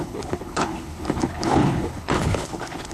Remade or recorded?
remade